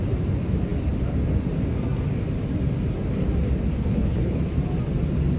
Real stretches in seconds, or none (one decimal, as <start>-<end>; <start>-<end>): 0.0-3.8; 4.4-5.4